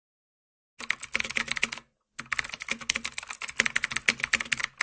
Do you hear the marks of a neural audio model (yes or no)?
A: no